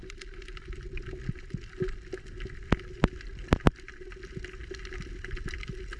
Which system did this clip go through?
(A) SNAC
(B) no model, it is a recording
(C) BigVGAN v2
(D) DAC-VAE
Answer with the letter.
B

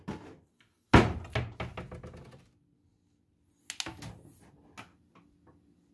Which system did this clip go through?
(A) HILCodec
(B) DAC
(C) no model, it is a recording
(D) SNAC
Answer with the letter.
C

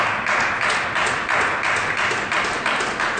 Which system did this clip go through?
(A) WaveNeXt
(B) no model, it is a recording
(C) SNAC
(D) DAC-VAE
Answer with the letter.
B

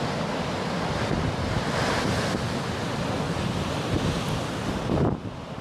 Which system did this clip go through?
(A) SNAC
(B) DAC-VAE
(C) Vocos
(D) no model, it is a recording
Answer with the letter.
D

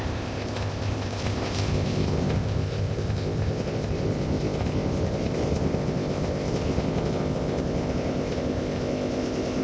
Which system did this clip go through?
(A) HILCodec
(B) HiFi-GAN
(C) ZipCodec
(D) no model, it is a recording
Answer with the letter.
C